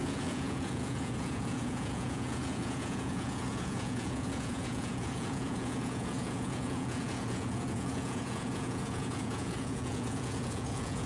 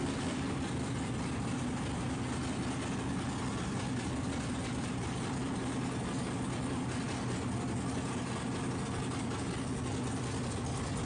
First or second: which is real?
second